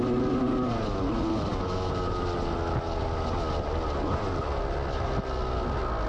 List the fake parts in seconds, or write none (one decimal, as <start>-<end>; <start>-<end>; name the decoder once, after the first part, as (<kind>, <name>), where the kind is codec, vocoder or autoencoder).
none